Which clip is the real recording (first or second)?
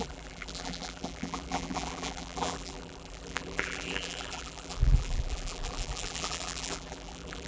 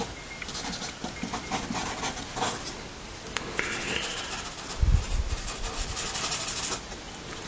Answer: second